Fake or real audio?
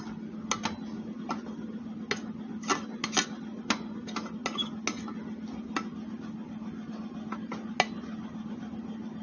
real